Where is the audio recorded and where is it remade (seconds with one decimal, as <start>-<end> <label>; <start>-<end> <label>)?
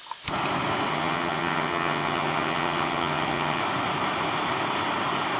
0.0-0.9 recorded; 0.9-3.6 remade; 3.6-5.4 recorded